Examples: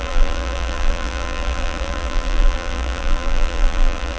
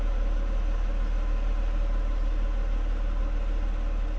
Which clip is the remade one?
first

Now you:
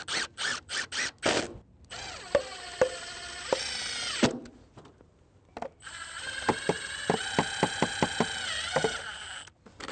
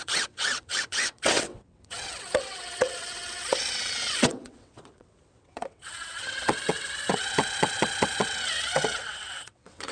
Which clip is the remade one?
second